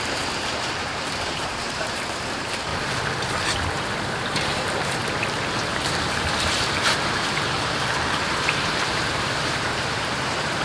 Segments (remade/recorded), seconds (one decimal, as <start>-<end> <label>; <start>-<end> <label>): 0.0-2.7 remade; 2.7-4.2 recorded; 4.2-5.0 remade; 5.0-5.7 recorded; 5.7-10.6 remade